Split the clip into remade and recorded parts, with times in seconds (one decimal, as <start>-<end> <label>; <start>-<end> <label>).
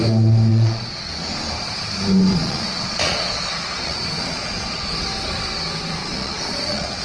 0.0-0.5 recorded; 0.5-1.1 remade; 1.1-2.3 recorded; 2.3-4.9 remade; 4.9-6.0 recorded; 6.0-7.0 remade